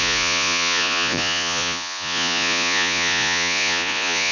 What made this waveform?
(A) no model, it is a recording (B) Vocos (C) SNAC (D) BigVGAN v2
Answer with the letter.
B